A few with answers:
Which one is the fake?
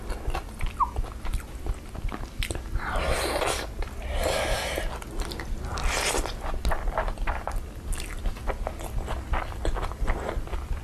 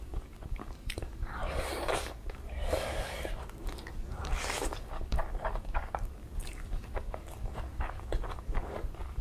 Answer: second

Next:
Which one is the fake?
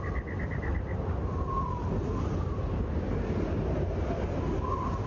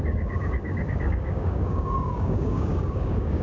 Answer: second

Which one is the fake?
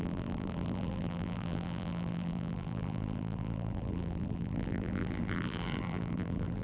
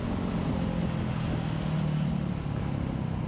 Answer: first